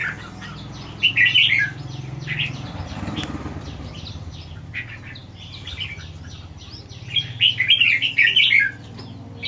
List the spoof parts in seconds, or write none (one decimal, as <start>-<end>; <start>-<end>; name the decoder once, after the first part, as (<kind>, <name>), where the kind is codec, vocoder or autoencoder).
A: none